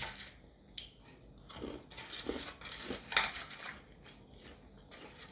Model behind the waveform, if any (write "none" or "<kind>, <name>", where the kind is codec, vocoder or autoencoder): none